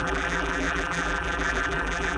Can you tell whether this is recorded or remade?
remade